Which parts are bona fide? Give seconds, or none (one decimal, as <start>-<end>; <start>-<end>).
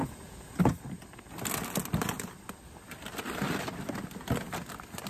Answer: 0.6-5.1